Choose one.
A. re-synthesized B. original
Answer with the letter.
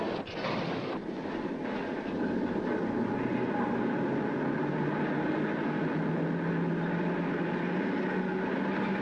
B